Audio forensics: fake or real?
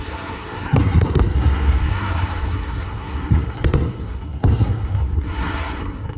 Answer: fake